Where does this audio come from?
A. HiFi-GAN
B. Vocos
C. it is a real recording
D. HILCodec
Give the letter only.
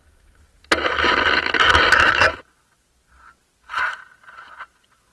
C